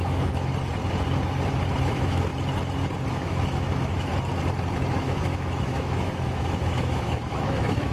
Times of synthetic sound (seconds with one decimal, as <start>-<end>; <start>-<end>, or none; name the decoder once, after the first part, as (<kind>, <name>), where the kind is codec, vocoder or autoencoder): 0.0-0.5 (autoencoder, DAC-VAE); 1.8-2.3; 3.1-4.1; 4.9-7.9